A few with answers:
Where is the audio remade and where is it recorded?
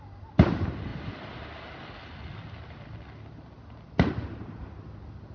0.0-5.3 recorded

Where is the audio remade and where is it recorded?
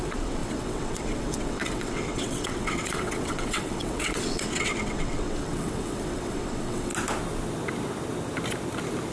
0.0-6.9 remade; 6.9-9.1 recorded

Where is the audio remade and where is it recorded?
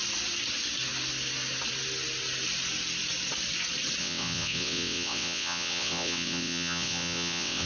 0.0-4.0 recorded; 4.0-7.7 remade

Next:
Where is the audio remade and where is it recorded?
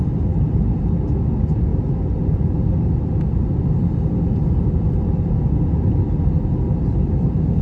0.0-7.6 recorded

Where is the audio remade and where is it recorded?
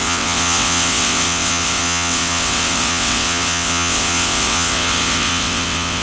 0.0-6.0 remade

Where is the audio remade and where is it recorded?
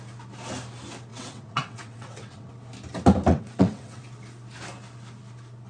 0.0-1.1 recorded; 1.1-2.5 remade; 2.5-3.3 recorded; 3.3-4.0 remade; 4.0-5.7 recorded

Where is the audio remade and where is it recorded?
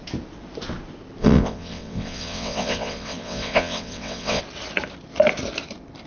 0.0-1.2 recorded; 1.2-4.4 remade; 4.4-6.1 recorded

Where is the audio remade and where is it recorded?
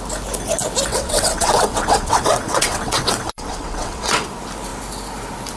0.0-0.9 recorded; 0.9-4.3 remade; 4.3-5.6 recorded